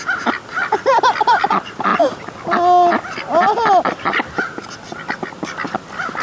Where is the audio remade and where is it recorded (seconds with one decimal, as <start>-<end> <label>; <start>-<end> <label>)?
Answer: 0.0-6.2 recorded